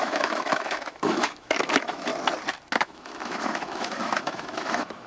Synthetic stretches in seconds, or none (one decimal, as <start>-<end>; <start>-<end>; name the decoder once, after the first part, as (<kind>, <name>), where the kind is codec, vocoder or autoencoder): 0.0-2.1 (autoencoder, DAC-VAE); 2.8-5.1